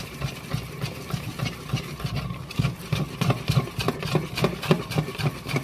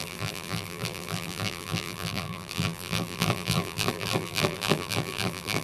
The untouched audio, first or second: first